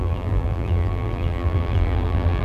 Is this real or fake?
fake